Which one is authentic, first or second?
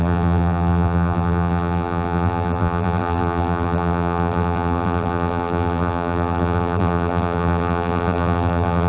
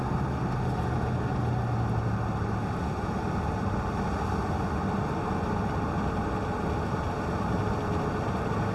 second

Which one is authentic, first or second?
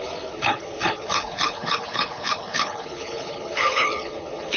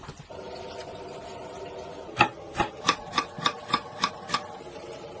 second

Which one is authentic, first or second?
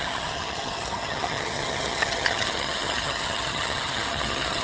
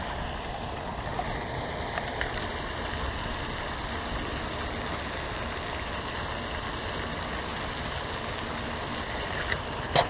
second